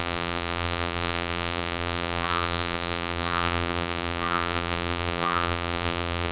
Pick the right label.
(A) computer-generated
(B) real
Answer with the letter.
A